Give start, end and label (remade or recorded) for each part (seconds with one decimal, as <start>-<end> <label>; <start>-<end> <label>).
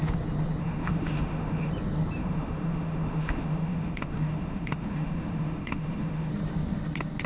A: 0.0-0.6 recorded; 0.6-1.7 remade; 1.7-2.2 recorded; 2.2-6.3 remade; 6.3-7.3 recorded